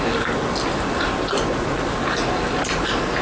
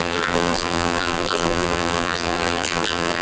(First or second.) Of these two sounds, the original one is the first